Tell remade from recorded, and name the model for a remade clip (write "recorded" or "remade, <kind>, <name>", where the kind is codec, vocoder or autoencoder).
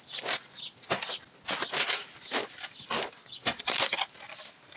recorded